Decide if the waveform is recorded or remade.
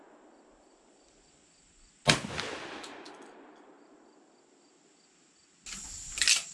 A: recorded